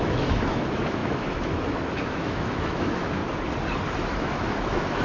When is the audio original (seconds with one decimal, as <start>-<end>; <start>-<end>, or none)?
3.2-4.0